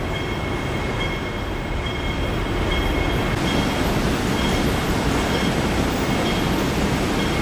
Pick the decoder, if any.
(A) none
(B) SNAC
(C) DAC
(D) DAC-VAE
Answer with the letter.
A